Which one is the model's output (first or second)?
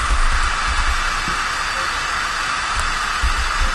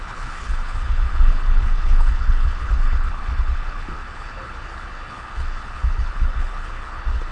second